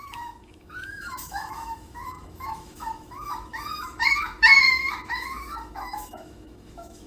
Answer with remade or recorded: remade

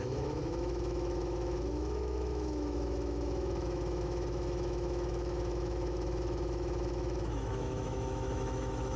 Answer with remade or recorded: remade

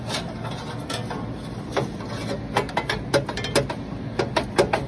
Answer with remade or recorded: recorded